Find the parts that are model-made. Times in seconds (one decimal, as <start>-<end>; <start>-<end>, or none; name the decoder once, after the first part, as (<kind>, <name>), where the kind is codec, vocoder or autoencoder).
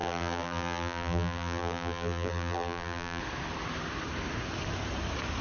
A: 0.0-3.2 (vocoder, BigVGAN v2)